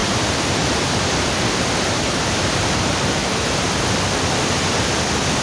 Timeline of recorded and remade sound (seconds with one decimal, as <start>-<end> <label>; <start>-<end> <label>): 0.0-3.2 recorded; 3.2-4.3 remade; 4.3-5.4 recorded

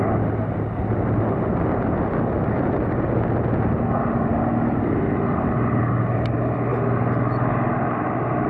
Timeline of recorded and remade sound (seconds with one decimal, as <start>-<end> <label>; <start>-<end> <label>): 0.0-8.5 recorded

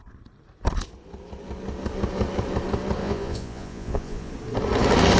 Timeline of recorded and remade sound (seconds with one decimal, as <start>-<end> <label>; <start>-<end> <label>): 0.0-3.0 recorded; 3.0-4.3 remade; 4.3-5.2 recorded

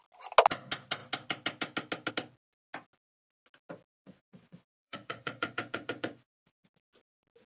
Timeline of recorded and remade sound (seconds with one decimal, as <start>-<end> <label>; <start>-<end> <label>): 0.0-3.9 recorded; 3.9-6.7 remade; 6.7-7.5 recorded

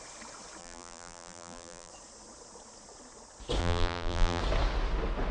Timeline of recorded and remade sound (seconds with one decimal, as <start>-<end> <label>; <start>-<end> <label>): 0.0-0.6 recorded; 0.6-1.9 remade; 1.9-3.6 recorded; 3.6-4.4 remade; 4.4-5.3 recorded